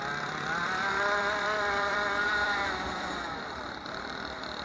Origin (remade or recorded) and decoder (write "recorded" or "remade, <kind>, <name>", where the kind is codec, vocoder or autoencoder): remade, vocoder, BigVGAN v2